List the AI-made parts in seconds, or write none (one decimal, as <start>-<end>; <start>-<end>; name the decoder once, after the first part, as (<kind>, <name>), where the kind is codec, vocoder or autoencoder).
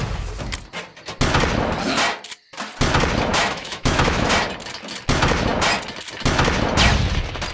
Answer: 3.3-4.3 (autoencoder, DAC-VAE)